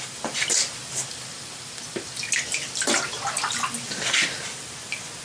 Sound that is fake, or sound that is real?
real